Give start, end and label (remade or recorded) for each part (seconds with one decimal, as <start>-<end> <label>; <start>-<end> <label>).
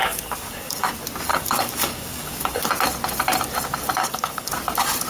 0.0-0.9 remade; 0.9-1.3 recorded; 1.3-2.7 remade; 2.7-4.0 recorded; 4.0-4.5 remade; 4.5-5.1 recorded